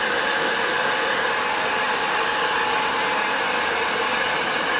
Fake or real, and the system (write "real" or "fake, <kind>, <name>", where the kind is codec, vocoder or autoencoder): real